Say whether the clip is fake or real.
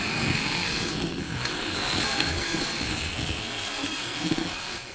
fake